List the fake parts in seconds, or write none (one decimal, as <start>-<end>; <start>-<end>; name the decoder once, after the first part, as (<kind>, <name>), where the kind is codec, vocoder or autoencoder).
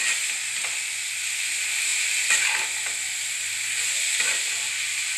none